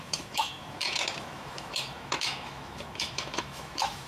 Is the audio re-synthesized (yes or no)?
yes